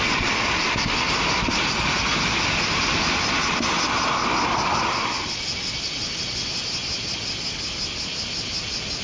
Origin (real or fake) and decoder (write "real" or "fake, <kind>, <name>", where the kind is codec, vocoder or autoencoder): real